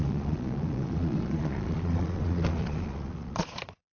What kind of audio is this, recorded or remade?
remade